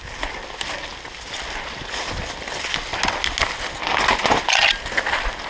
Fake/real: real